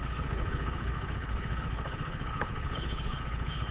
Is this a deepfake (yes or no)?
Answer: yes